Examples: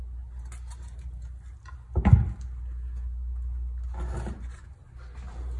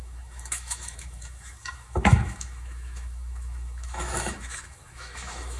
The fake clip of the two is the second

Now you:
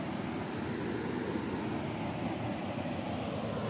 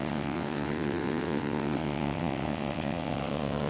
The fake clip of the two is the second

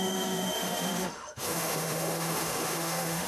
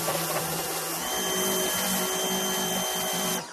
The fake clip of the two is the first